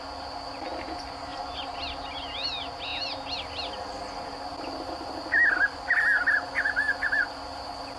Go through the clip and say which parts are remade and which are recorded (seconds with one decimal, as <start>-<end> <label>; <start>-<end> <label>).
0.0-8.0 recorded